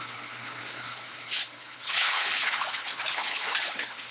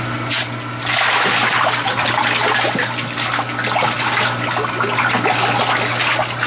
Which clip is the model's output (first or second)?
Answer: first